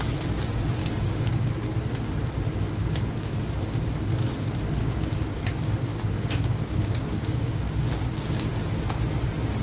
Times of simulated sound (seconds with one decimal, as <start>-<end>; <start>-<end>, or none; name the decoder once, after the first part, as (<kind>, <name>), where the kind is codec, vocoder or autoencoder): 0.8-1.6 (codec, DAC); 2.8-3.3; 4.8-5.4; 5.9-7.6